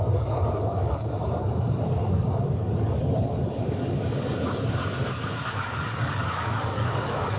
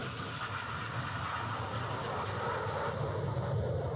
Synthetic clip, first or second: first